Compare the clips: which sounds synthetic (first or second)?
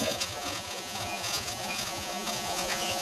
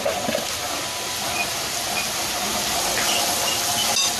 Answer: first